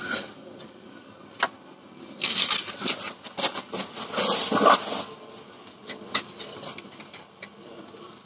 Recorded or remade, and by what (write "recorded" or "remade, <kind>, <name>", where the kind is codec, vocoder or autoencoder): recorded